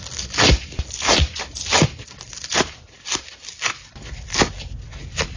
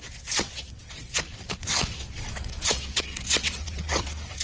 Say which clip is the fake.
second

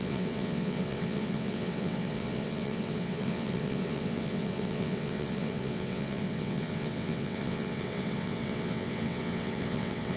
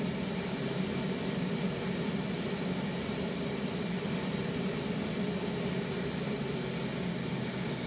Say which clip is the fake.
first